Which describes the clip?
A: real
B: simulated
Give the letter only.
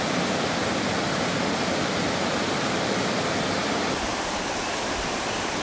A